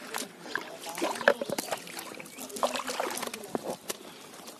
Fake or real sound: real